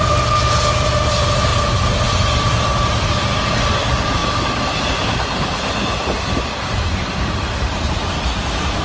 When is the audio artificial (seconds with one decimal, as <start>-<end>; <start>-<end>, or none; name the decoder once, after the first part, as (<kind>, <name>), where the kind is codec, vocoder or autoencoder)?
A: none